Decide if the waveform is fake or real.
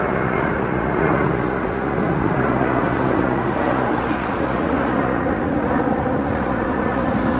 fake